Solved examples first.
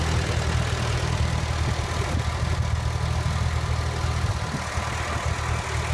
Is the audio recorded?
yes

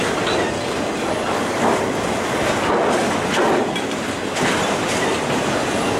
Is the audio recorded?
yes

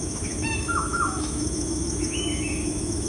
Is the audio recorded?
no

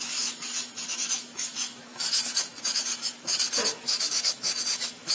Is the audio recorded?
no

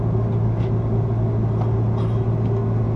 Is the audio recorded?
yes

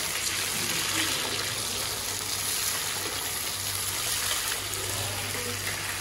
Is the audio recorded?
yes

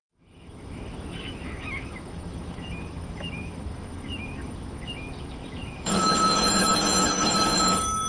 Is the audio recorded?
no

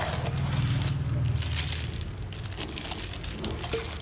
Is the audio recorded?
yes